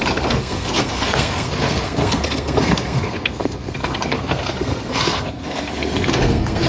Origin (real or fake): fake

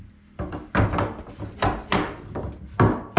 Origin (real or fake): real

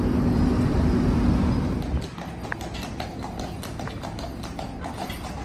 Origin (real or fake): real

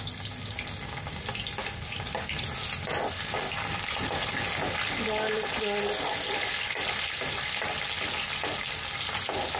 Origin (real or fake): real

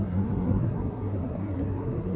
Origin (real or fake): fake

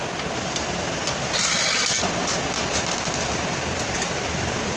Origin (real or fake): real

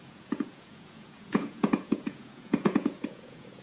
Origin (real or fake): fake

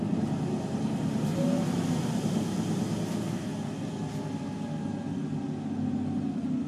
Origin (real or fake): real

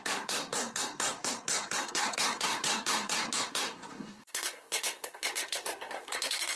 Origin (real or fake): fake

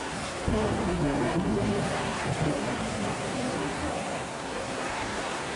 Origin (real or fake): fake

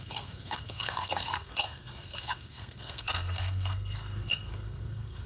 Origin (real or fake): fake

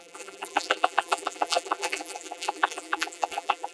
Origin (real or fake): fake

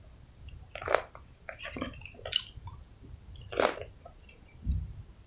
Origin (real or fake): fake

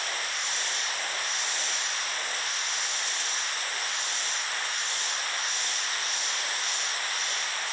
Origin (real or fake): real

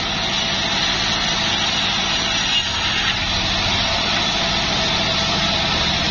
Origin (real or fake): real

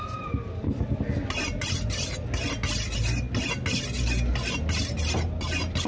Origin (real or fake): real